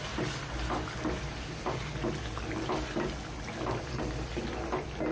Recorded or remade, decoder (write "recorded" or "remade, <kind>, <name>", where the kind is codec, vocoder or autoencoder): recorded